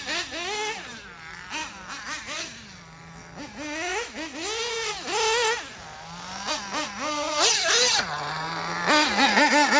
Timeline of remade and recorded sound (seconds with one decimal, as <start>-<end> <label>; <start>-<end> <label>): 0.0-9.8 recorded

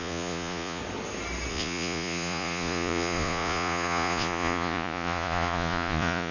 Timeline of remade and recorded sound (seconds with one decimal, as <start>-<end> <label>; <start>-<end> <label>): 0.0-0.8 remade; 0.8-1.5 recorded; 1.5-6.3 remade